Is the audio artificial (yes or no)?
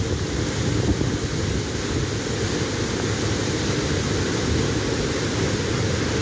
no